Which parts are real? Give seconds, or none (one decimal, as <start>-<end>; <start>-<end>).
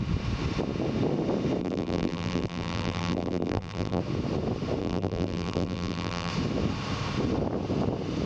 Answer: 0.0-1.6; 4.0-4.8; 6.3-8.2